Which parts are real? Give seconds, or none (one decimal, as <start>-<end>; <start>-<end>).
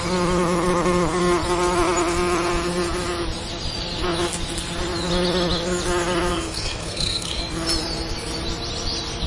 0.0-6.3; 7.4-9.3